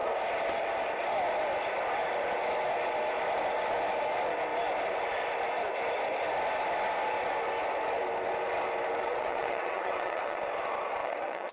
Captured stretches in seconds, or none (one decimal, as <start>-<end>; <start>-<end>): 0.0-9.0; 10.4-11.0